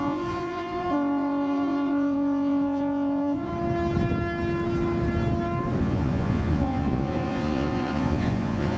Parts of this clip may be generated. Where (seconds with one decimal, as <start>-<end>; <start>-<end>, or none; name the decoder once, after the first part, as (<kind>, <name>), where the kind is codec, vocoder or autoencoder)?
0.0-3.5 (vocoder, Vocos); 5.8-8.8